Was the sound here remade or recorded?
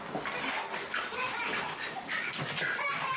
recorded